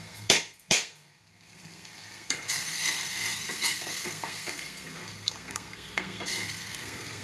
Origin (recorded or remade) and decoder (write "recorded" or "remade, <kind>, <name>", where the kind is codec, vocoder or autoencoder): remade, codec, SNAC